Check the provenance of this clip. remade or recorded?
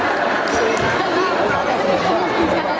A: remade